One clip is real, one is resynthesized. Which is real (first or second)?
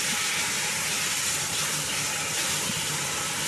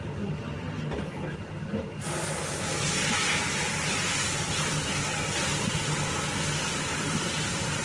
second